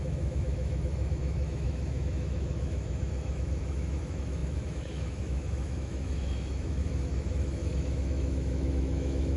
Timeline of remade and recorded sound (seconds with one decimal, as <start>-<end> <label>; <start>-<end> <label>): 0.0-9.4 remade

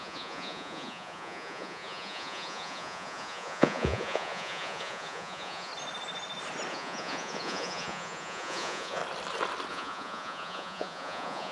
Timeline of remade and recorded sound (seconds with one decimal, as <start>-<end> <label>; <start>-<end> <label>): 0.0-5.7 remade; 5.7-6.7 recorded; 6.7-9.0 remade; 9.0-9.7 recorded; 9.7-11.5 remade

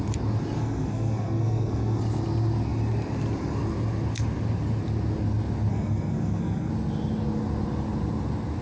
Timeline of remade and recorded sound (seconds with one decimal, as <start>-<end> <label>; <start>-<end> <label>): 0.0-0.6 recorded; 0.6-2.0 remade; 2.0-5.7 recorded; 5.7-6.7 remade; 6.7-8.6 recorded

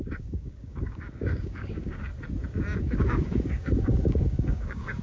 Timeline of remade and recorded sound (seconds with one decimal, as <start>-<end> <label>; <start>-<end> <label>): 0.0-2.1 remade; 2.1-2.8 recorded; 2.8-5.0 remade

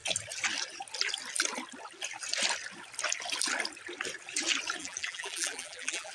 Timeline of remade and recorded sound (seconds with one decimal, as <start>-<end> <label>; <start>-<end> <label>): 0.0-4.8 recorded; 4.8-6.1 remade